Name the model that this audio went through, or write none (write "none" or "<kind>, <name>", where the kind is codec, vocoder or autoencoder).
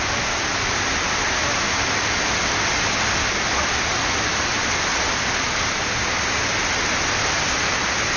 none